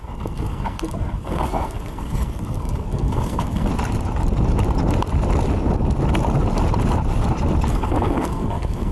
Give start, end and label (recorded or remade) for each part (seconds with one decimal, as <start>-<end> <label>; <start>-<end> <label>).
0.0-3.7 remade; 3.7-7.7 recorded; 7.7-8.9 remade